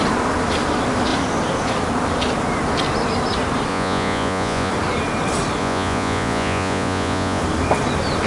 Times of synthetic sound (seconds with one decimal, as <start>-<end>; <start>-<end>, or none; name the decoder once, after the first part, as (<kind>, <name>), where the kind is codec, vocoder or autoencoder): 3.7-4.7 (vocoder, Vocos); 5.6-7.4